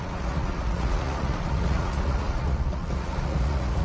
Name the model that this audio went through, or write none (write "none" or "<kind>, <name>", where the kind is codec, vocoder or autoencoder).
vocoder, Vocos